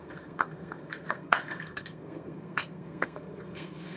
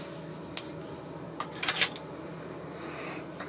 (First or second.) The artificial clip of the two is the first